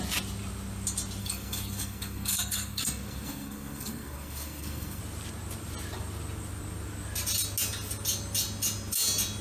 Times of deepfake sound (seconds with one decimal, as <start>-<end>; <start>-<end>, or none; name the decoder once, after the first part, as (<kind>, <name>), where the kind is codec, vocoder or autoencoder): 1.2-5.0 (codec, SNAC)